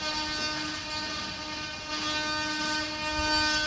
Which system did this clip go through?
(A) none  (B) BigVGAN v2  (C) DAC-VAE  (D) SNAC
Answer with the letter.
A